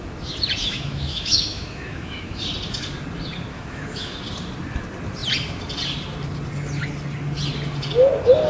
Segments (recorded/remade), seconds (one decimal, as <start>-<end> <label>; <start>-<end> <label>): 0.0-0.6 recorded; 0.6-2.4 remade; 2.4-3.5 recorded; 3.5-4.2 remade; 4.2-8.5 recorded

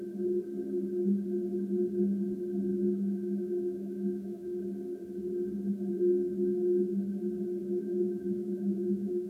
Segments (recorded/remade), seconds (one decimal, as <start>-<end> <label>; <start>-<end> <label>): 0.0-2.7 recorded; 2.7-4.6 remade; 4.6-7.6 recorded; 7.6-9.3 remade